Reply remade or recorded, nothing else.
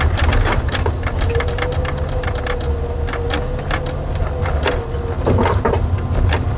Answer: recorded